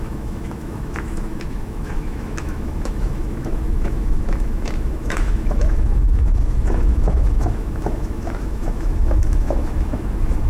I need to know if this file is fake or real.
fake